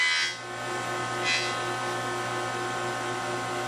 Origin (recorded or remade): recorded